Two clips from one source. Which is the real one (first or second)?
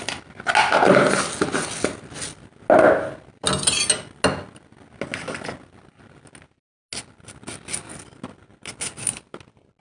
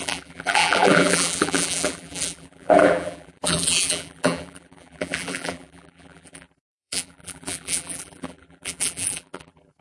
first